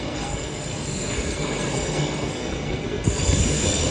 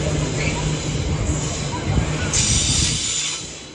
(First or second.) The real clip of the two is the second